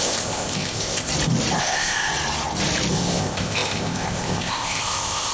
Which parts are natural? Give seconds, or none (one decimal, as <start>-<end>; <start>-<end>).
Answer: 1.1-1.6; 2.1-2.9